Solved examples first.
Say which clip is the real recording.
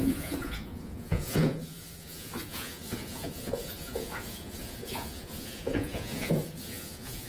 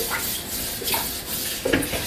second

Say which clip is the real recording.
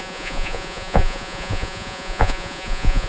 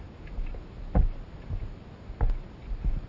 second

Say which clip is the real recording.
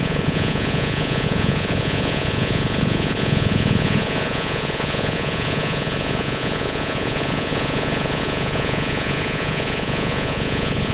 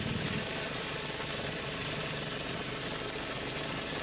second